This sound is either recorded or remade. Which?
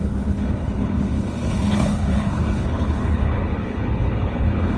remade